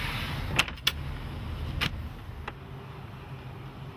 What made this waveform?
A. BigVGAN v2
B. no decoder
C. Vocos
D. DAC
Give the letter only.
B